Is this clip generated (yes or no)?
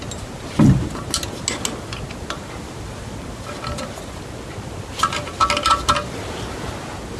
no